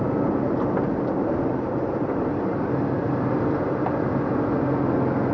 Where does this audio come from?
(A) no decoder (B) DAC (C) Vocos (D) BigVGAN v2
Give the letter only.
A